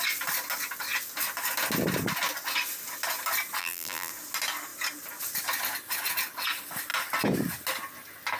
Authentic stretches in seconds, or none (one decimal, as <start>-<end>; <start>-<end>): 0.0-3.6; 4.1-8.4